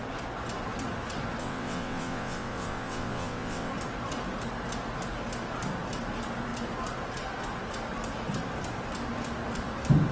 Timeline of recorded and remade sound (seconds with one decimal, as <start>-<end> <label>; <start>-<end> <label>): 0.0-1.4 recorded; 1.4-3.7 remade; 3.7-10.1 recorded